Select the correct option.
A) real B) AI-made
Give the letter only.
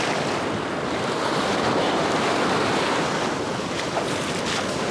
A